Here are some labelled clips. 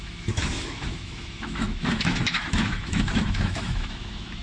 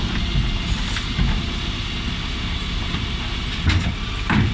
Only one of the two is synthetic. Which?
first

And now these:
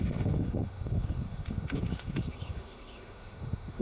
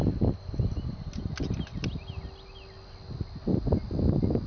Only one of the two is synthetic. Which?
first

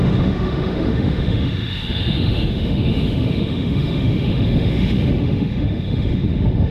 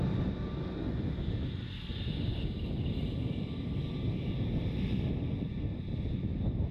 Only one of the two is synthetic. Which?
first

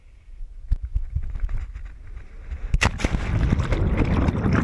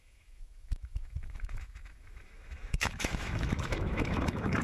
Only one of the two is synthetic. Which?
second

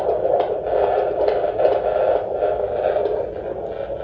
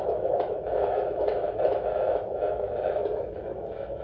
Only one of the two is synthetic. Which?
second